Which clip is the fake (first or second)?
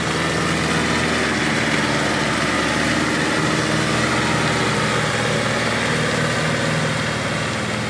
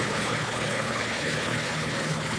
second